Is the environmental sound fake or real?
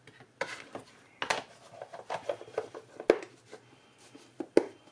real